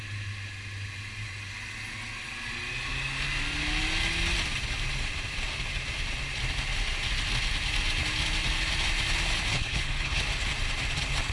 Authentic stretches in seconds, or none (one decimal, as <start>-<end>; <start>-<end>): 0.0-9.5; 10.2-11.3